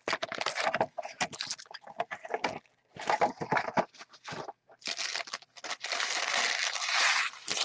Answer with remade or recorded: recorded